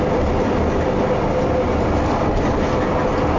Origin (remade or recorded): recorded